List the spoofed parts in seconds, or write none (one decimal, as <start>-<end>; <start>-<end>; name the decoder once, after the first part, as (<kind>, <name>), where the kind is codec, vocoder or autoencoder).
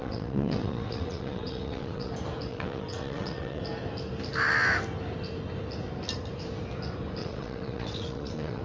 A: 0.0-2.1 (vocoder, WaveNeXt); 2.5-3.6; 7.2-8.6